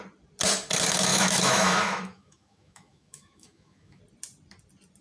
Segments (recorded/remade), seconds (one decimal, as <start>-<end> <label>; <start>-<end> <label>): 0.0-1.1 recorded; 1.1-4.0 remade; 4.0-5.0 recorded